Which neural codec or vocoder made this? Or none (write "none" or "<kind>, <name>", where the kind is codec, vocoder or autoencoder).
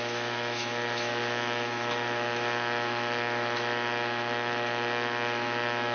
autoencoder, DAC-VAE